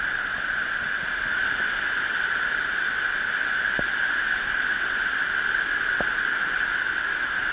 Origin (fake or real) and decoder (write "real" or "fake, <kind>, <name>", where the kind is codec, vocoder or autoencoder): real